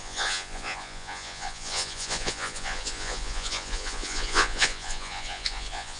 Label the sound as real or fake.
fake